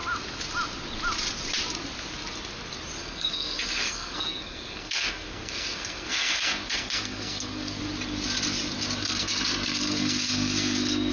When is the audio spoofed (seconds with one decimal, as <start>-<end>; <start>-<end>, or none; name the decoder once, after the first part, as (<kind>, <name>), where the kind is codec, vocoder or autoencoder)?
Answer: 3.0-7.8 (codec, SNAC); 9.0-11.1